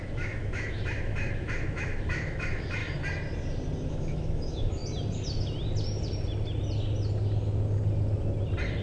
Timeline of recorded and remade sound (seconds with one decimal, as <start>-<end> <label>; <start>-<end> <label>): 0.0-2.8 remade; 2.8-3.9 recorded; 3.9-4.8 remade; 4.8-8.8 recorded